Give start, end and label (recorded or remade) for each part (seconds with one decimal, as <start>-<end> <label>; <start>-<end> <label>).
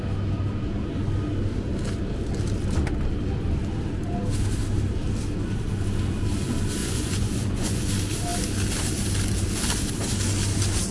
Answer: 0.0-6.8 recorded; 6.8-7.8 remade; 7.8-10.9 recorded